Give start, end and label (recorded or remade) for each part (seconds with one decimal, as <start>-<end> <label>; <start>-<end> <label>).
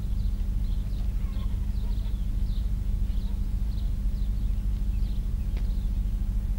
0.0-6.6 recorded